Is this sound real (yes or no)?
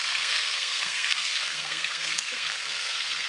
no